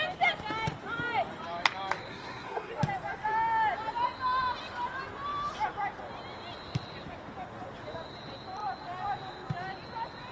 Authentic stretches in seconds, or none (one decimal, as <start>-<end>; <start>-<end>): 0.0-2.1; 2.7-10.3

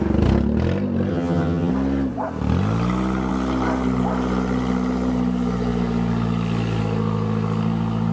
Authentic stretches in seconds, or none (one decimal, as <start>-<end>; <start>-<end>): 0.0-1.1; 1.7-8.1